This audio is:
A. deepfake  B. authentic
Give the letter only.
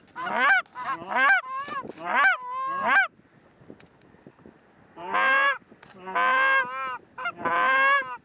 B